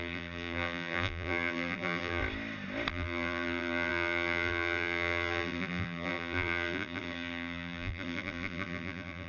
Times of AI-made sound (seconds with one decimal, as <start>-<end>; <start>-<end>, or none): 0.0-2.2; 2.9-9.3